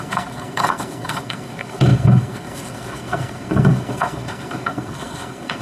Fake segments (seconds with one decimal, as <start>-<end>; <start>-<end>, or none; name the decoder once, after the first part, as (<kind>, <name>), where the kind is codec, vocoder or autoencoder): 0.0-5.6 (codec, SNAC)